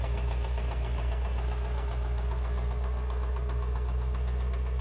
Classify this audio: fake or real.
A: fake